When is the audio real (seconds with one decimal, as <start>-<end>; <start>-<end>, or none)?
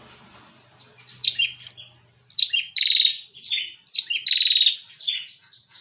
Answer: 0.0-5.8